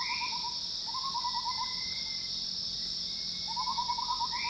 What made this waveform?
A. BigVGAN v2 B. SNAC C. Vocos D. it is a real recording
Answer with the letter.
D